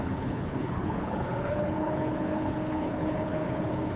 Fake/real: fake